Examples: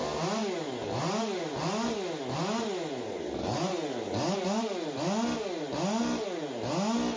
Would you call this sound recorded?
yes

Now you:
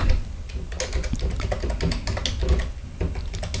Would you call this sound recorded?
yes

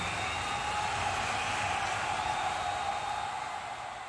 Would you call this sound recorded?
yes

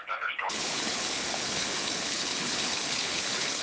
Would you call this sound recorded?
no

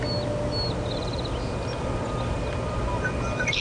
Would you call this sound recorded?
yes